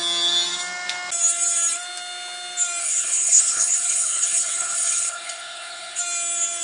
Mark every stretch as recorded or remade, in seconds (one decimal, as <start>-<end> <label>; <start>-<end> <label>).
0.0-2.8 recorded; 2.8-6.0 remade; 6.0-6.6 recorded